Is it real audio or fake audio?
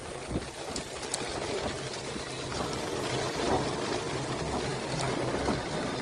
real